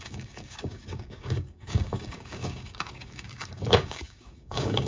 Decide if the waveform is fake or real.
fake